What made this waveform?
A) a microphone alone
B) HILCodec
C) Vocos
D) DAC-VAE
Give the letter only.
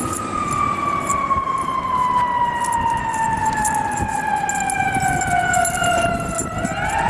A